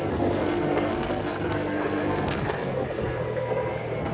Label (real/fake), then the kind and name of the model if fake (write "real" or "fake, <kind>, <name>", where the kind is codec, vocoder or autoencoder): fake, codec, SNAC